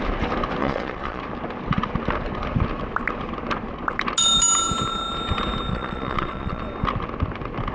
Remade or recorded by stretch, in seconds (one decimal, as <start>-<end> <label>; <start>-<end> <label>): 0.0-0.6 recorded; 0.6-1.2 remade; 1.2-5.7 recorded; 5.7-6.6 remade; 6.6-7.7 recorded